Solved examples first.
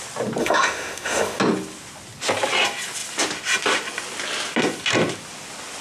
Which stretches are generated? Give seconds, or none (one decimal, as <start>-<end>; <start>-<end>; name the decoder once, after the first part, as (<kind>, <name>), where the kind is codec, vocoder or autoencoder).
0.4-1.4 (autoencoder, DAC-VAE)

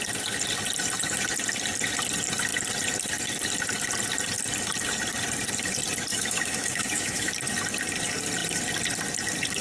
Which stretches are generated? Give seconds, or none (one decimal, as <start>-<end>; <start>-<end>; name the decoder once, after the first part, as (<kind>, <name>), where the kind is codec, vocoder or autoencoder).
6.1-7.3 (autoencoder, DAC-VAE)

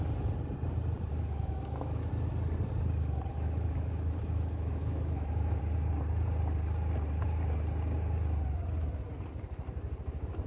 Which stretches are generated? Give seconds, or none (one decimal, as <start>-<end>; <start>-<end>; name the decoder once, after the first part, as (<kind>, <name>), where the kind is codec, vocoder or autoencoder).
1.1-2.1 (autoencoder, DAC-VAE); 3.3-5.6